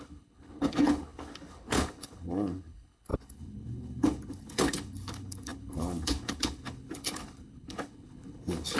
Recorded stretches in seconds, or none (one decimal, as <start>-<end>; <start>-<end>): none